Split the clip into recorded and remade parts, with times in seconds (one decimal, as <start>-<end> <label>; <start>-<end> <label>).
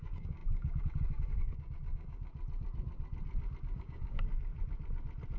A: 0.0-2.3 remade; 2.3-3.6 recorded; 3.6-4.5 remade; 4.5-5.4 recorded